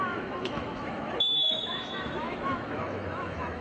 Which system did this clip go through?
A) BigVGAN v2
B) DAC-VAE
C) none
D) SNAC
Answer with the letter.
B